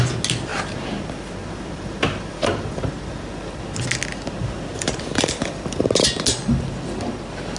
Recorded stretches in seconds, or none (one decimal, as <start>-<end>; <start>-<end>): 0.0-0.5; 2.9-4.7; 5.8-7.6